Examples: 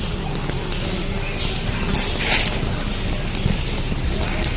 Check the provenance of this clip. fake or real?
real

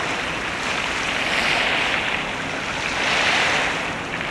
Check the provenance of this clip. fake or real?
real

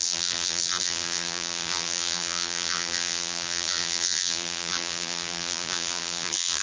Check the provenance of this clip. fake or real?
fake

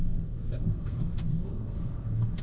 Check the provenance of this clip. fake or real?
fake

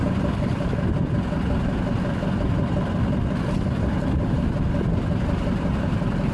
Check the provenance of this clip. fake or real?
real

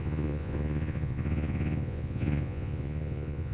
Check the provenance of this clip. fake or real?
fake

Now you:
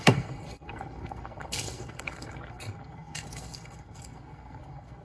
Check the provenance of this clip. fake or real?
fake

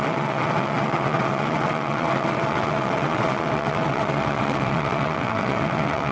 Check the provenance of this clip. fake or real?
fake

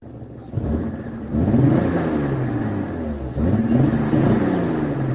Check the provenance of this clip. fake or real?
real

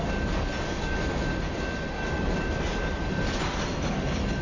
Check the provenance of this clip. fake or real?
real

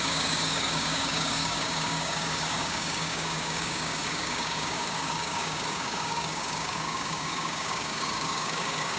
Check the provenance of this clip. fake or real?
fake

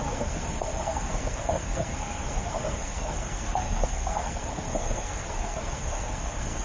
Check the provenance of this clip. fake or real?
fake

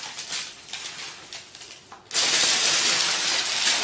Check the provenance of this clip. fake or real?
real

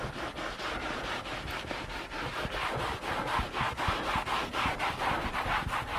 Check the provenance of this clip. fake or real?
real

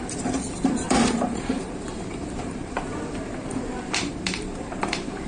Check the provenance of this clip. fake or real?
fake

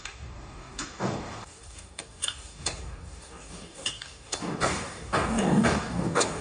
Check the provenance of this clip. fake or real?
fake